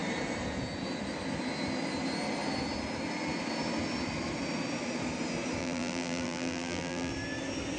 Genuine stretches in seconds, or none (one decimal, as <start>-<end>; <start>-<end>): 0.0-5.6; 7.1-7.8